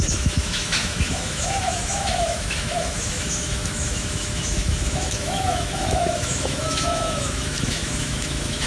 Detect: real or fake fake